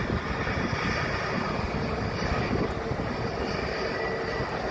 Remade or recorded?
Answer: recorded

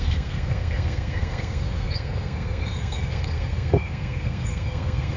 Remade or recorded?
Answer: remade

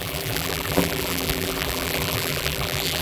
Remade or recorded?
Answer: remade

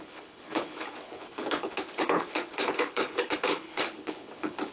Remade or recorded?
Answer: remade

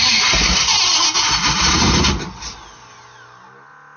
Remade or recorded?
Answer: recorded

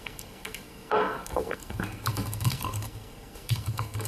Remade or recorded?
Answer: remade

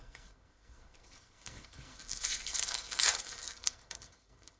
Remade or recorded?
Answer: remade